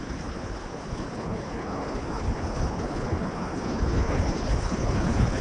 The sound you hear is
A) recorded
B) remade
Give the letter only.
B